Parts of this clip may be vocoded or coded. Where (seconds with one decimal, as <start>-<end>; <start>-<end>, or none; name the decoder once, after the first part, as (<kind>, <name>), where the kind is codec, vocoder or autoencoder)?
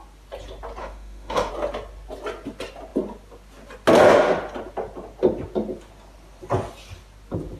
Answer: 0.8-1.5 (autoencoder, DAC-VAE)